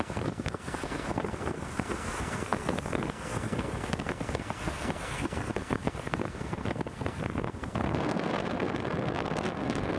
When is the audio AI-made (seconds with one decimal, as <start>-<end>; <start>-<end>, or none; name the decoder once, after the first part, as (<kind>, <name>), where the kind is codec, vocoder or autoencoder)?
0.0-10.0 (codec, SNAC)